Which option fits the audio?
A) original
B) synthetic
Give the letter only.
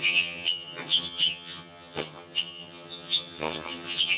B